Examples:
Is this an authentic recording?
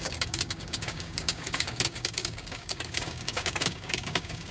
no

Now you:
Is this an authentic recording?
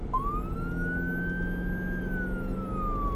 yes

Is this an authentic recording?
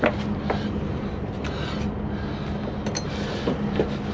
yes